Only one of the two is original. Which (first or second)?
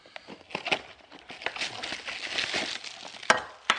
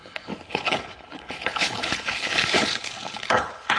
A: first